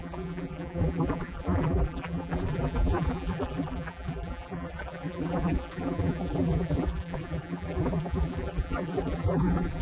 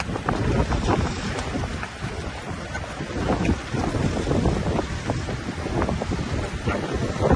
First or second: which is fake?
first